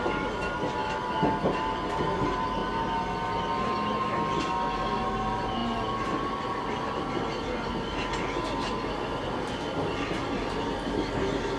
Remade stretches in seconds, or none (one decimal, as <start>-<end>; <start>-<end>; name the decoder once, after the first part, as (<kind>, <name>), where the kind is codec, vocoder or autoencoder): none